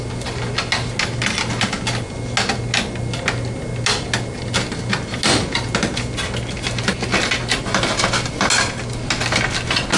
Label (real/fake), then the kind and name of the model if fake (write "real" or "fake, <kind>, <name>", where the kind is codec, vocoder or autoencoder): real